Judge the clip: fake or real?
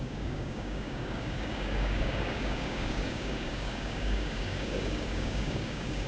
fake